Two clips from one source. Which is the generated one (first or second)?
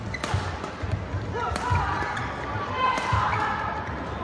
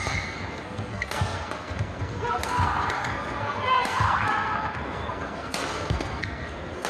second